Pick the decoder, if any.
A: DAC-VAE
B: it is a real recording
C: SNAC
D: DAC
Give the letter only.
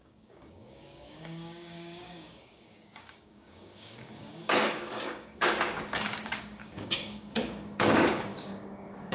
D